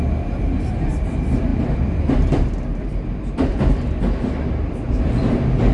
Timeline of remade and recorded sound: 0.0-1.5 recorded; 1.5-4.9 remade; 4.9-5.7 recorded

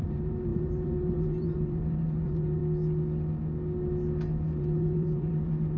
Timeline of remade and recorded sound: 0.0-2.6 remade; 2.6-4.6 recorded; 4.6-5.8 remade